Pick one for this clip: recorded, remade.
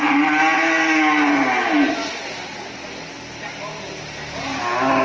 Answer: recorded